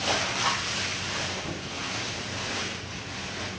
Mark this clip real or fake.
real